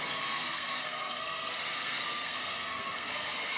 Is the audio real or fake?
fake